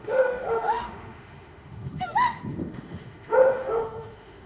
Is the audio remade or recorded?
remade